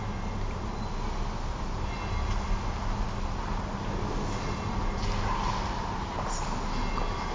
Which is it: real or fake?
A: real